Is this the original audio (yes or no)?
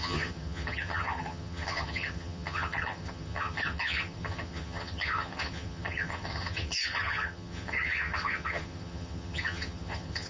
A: no